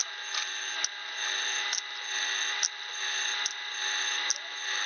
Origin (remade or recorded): recorded